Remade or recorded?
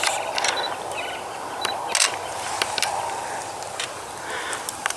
recorded